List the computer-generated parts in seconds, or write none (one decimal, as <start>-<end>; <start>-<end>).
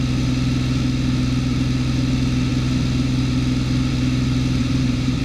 4.6-5.2